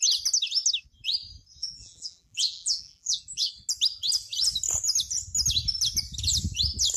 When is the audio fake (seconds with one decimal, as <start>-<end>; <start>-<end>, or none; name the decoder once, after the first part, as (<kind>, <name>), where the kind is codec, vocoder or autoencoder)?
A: 1.6-3.5 (vocoder, BigVGAN v2)